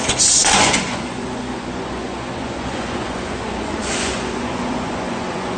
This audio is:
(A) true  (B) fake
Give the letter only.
B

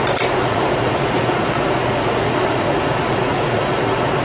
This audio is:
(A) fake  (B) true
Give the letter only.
A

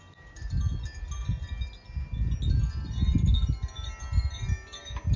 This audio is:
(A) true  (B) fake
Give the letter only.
A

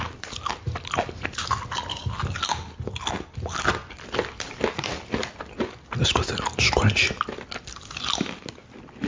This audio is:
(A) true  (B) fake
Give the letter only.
A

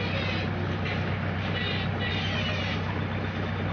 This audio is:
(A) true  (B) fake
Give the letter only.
A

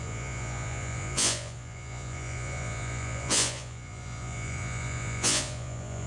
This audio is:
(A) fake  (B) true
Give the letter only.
A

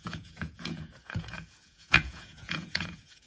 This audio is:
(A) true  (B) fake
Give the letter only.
B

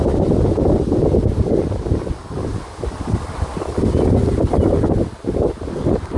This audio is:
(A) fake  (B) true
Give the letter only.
B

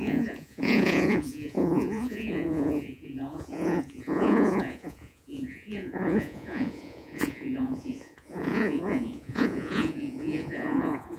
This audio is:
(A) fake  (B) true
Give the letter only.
A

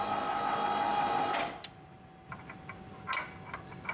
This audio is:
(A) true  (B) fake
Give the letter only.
A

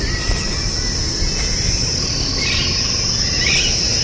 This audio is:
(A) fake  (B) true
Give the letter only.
B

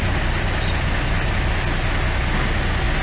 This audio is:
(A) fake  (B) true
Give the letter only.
B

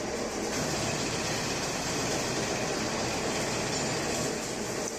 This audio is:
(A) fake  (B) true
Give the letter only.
B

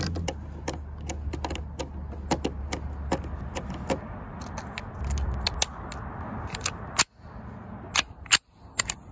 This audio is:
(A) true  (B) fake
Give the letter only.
A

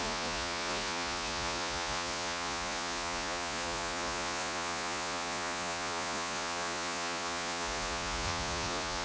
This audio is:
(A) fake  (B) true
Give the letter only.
A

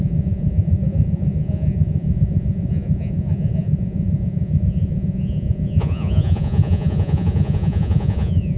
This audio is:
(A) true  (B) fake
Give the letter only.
B